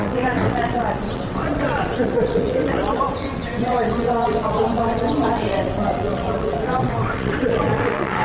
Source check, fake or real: fake